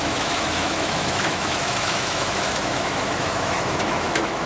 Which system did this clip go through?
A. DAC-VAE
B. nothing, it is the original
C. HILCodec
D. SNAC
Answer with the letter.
A